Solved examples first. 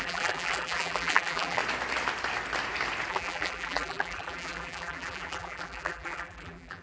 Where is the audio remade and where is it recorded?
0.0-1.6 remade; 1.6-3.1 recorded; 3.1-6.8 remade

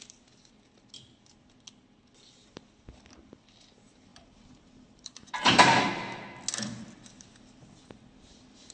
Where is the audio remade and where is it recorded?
0.0-4.1 recorded; 4.1-5.8 remade; 5.8-8.7 recorded

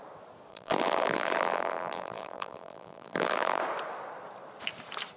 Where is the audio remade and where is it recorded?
0.0-0.5 recorded; 0.5-3.6 remade; 3.6-5.2 recorded

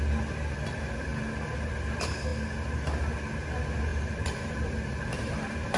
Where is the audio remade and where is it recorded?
0.0-1.1 remade; 1.1-1.7 recorded; 1.7-2.3 remade; 2.3-3.5 recorded; 3.5-5.8 remade

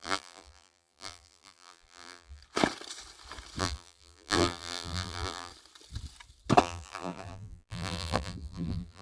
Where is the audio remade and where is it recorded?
0.0-2.4 remade; 2.4-3.6 recorded; 3.6-5.5 remade; 5.5-6.6 recorded; 6.6-9.0 remade